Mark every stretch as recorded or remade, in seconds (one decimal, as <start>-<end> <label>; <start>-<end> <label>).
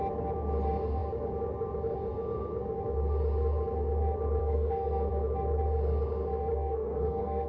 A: 0.0-4.4 recorded; 4.4-5.1 remade; 5.1-6.5 recorded; 6.5-7.5 remade